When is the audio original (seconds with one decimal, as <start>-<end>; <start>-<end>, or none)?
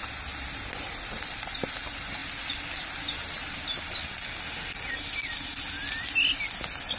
0.0-7.0